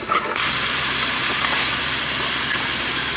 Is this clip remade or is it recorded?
recorded